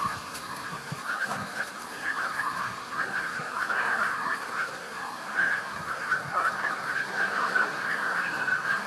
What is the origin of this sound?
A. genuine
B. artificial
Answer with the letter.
B